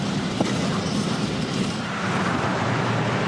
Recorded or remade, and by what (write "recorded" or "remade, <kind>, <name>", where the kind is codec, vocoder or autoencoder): remade, vocoder, BigVGAN v2